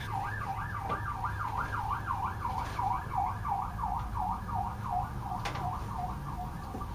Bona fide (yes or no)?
yes